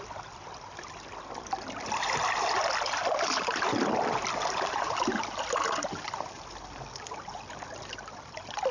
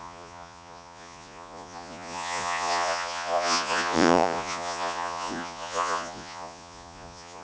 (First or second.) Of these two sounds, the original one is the first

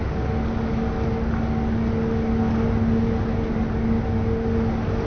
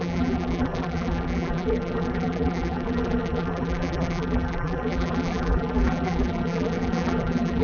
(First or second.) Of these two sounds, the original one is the first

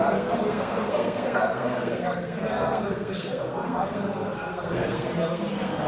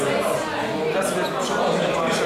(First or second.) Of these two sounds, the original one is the second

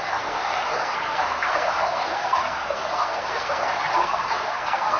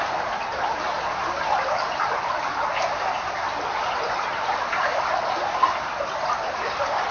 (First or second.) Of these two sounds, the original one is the second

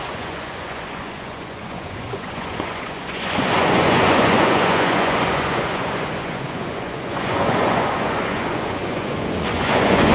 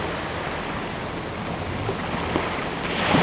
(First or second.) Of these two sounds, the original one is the second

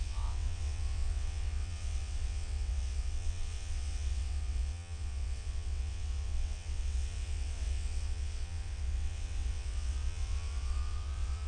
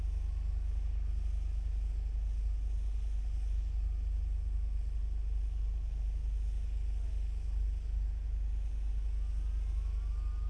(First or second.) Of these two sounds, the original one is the second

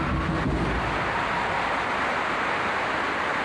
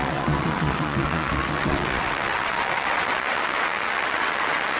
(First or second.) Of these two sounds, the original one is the first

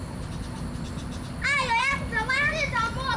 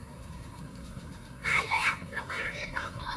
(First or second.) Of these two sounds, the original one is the first